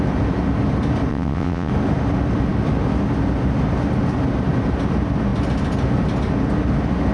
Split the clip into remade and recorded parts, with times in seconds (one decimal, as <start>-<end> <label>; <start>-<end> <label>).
0.0-1.1 recorded; 1.1-1.7 remade; 1.7-7.1 recorded

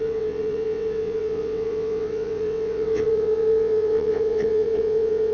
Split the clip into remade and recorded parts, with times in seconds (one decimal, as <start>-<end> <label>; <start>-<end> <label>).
0.0-5.3 remade

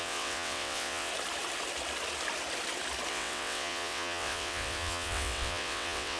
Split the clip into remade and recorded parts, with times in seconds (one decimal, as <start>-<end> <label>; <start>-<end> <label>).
0.0-1.1 remade; 1.1-3.1 recorded; 3.1-6.2 remade

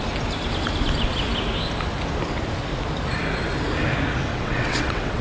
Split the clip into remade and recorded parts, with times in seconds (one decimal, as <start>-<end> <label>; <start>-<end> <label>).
0.0-4.3 recorded; 4.3-5.2 remade

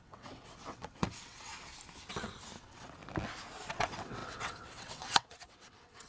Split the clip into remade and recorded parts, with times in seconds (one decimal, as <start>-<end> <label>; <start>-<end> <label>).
0.0-1.5 remade; 1.5-2.6 recorded; 2.6-3.0 remade; 3.0-3.7 recorded; 3.7-6.1 remade